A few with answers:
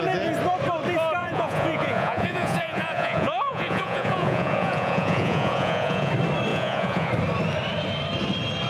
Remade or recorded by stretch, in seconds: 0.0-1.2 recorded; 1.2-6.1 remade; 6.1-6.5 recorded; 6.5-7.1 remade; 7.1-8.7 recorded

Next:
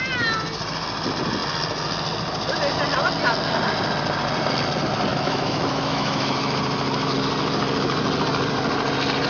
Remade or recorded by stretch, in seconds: 0.0-5.1 recorded; 5.1-6.6 remade; 6.6-9.3 recorded

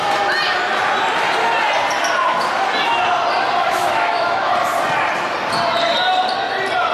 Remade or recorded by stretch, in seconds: 0.0-3.7 recorded; 3.7-4.5 remade; 4.5-6.9 recorded

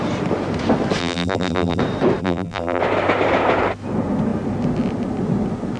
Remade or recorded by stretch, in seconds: 0.0-1.0 recorded; 1.0-1.8 remade; 1.8-2.2 recorded; 2.2-2.8 remade; 2.8-5.8 recorded

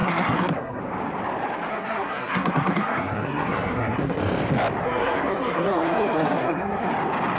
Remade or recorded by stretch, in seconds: 0.0-0.8 remade; 0.8-1.7 recorded; 1.7-4.2 remade; 4.2-4.8 recorded; 4.8-6.9 remade; 6.9-7.4 recorded